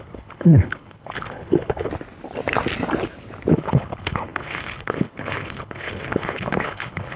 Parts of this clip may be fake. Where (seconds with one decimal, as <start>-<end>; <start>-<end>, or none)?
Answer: 0.0-1.9; 3.5-7.2